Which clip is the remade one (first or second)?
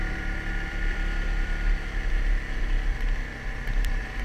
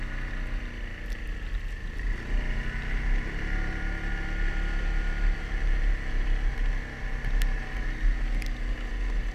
first